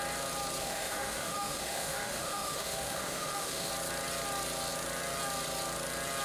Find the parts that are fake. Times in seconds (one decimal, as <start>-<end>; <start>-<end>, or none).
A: 0.6-3.7